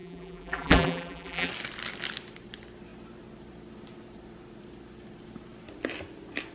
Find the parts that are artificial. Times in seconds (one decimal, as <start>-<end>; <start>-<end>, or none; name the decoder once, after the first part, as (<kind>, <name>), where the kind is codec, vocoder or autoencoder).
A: 0.0-1.5 (vocoder, BigVGAN v2)